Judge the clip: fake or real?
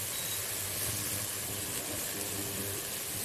real